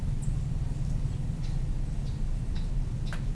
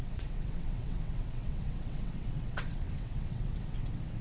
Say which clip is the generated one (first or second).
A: second